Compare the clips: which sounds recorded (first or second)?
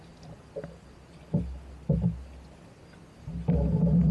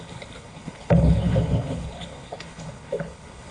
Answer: first